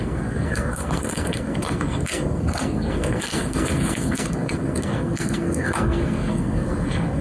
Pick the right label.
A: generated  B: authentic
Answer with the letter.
A